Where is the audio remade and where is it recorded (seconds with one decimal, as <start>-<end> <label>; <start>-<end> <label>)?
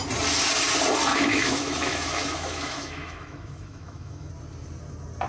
0.0-1.1 recorded; 1.1-4.3 remade; 4.3-5.3 recorded